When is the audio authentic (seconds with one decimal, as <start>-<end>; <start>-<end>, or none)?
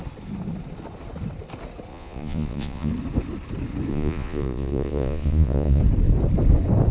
0.0-1.9; 2.9-3.9; 5.8-6.9